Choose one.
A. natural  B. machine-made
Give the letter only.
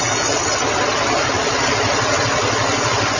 A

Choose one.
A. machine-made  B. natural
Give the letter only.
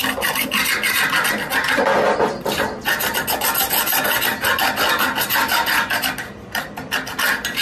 B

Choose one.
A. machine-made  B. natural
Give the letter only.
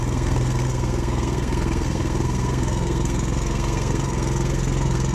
A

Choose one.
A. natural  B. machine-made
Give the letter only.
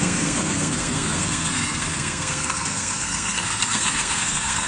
B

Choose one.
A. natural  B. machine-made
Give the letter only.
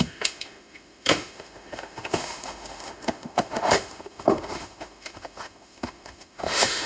B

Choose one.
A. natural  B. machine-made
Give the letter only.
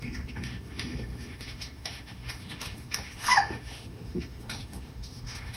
B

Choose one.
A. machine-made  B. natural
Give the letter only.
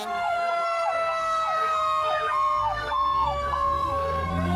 A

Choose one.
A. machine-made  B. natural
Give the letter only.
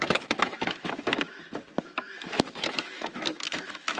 A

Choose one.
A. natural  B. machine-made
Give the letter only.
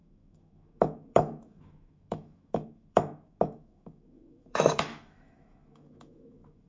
B